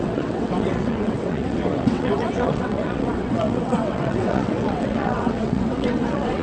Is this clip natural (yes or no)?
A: no